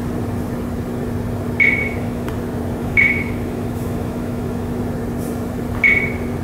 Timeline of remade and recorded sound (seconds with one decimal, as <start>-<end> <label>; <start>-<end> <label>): 0.0-1.8 recorded; 1.8-2.3 remade; 2.3-2.8 recorded; 2.8-4.8 remade; 4.8-6.4 recorded